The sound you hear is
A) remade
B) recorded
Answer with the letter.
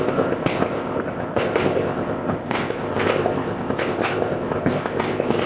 A